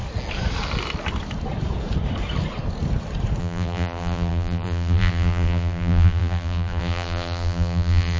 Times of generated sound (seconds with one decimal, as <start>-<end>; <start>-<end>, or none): 3.4-8.2